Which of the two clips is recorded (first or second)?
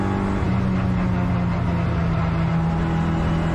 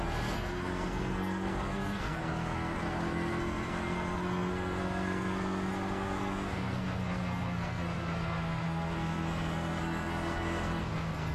first